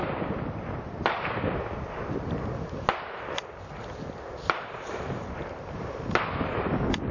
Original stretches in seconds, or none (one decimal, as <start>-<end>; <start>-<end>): 0.0-7.1

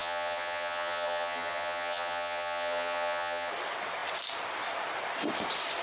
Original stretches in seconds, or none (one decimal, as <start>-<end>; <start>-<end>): 3.5-5.8

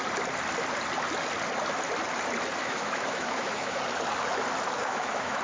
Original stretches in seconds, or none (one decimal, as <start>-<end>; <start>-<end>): 0.0-2.6; 3.8-4.8